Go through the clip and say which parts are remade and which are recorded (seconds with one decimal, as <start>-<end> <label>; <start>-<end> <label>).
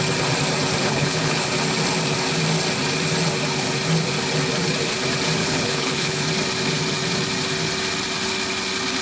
0.0-0.8 recorded; 0.8-1.5 remade; 1.5-5.4 recorded; 5.4-6.2 remade; 6.2-9.0 recorded